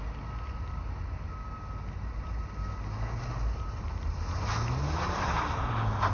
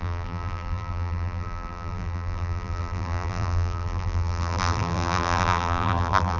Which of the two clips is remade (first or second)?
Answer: second